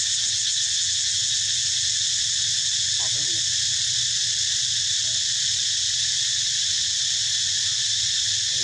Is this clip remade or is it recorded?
recorded